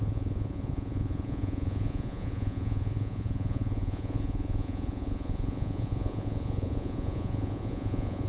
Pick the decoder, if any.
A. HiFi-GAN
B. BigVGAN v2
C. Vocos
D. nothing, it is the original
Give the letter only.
C